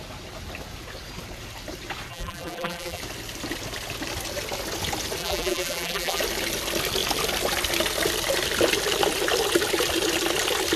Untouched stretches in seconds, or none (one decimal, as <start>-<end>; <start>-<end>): 0.0-2.1; 3.0-5.2; 6.2-10.8